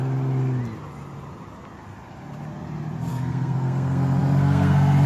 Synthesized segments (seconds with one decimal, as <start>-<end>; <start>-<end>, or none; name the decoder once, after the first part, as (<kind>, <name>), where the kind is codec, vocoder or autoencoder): 3.1-5.1 (codec, SNAC)